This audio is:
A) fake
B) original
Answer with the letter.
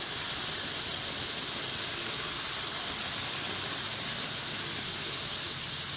B